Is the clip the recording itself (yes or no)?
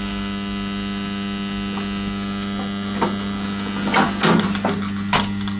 yes